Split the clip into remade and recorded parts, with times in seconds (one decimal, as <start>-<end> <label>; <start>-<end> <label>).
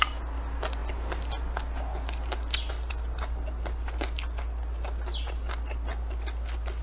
0.0-6.8 recorded